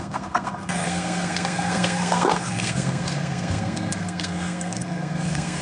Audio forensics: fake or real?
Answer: fake